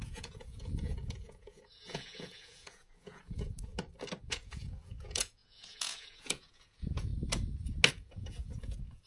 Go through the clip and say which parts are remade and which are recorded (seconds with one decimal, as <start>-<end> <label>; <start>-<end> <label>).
0.0-3.7 remade; 3.7-4.2 recorded; 4.2-7.1 remade; 7.1-7.9 recorded; 7.9-9.1 remade